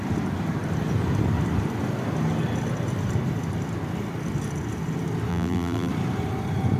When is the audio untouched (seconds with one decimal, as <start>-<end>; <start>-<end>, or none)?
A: 0.0-5.3; 5.9-6.8